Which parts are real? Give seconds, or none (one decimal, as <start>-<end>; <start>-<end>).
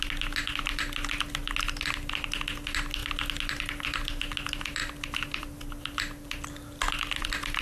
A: 0.0-4.8